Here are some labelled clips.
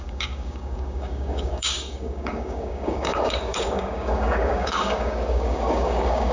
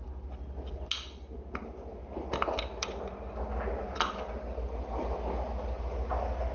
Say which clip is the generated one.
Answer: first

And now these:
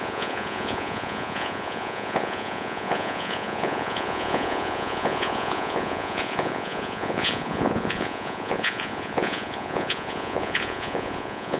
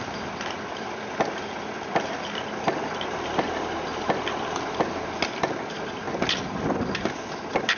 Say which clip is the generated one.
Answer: first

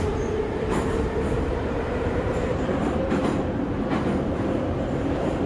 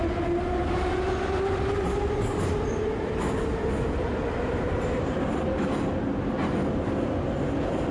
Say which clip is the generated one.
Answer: first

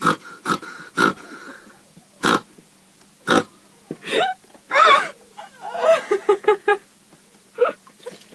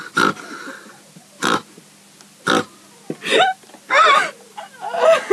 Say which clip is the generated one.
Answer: first